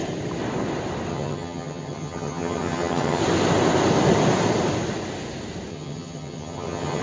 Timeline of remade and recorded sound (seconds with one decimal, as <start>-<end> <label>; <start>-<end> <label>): 0.0-1.1 recorded; 1.1-3.2 remade; 3.2-5.7 recorded; 5.7-7.0 remade